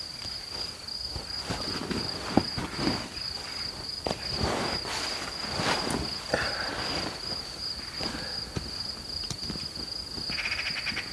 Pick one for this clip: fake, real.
real